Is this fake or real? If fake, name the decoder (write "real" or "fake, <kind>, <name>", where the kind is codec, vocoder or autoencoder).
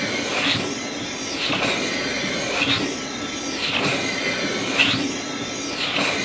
real